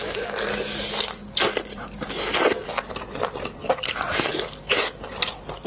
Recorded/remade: recorded